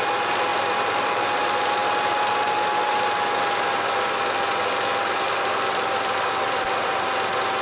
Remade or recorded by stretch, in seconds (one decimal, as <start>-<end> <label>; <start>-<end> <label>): 0.0-0.5 recorded; 0.5-1.1 remade; 1.1-4.9 recorded; 4.9-7.1 remade; 7.1-7.6 recorded